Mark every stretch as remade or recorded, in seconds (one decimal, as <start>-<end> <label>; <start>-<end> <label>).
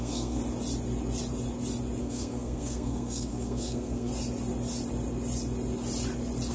0.0-0.4 remade; 0.4-2.0 recorded; 2.0-4.1 remade; 4.1-6.5 recorded